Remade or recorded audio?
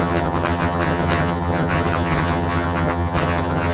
remade